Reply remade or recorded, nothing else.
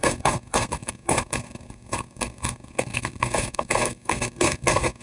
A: remade